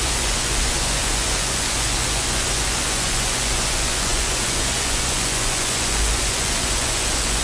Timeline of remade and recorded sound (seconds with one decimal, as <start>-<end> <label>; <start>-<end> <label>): 0.0-7.4 remade